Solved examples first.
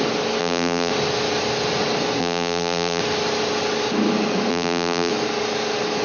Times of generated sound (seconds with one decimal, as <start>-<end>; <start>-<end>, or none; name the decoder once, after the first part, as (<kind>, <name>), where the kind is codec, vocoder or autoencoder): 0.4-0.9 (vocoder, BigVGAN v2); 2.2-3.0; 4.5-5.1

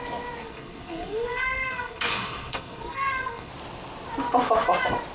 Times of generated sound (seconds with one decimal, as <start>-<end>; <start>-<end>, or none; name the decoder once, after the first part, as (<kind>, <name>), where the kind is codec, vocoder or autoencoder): 0.4-3.5 (codec, SNAC)

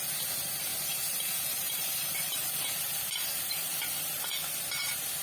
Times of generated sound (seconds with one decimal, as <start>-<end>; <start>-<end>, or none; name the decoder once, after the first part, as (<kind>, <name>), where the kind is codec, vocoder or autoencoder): 0.7-3.8 (vocoder, BigVGAN v2)

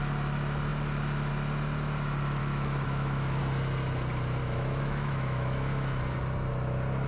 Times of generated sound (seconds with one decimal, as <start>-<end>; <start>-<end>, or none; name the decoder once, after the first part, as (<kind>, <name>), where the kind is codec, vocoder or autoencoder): 2.4-3.4 (autoencoder, DAC-VAE); 4.4-6.0